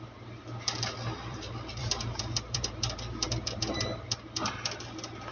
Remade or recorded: remade